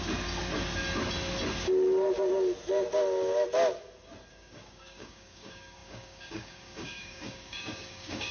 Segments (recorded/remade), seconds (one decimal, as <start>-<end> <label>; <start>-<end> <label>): 0.0-4.3 recorded; 4.3-8.3 remade